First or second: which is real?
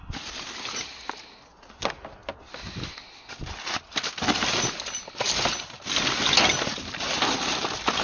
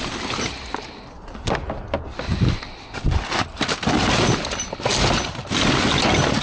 first